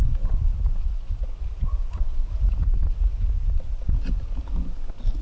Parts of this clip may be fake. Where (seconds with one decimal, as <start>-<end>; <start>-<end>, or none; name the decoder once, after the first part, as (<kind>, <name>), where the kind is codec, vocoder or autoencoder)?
0.5-3.6 (vocoder, Vocos)